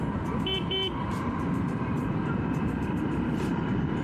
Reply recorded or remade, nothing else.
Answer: recorded